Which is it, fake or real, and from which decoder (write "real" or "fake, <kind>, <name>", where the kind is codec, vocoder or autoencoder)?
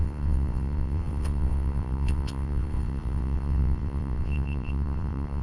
fake, vocoder, WaveNeXt